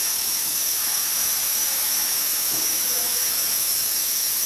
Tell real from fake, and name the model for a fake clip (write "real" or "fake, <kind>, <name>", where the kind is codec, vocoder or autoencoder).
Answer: fake, autoencoder, DAC-VAE